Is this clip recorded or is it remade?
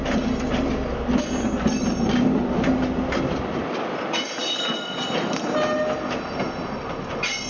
recorded